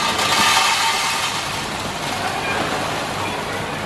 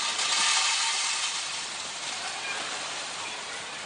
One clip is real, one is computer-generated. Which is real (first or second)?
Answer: first